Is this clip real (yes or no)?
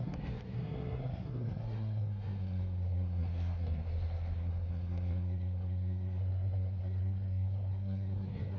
no